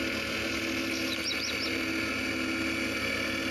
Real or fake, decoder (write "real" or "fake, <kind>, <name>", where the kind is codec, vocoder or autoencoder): real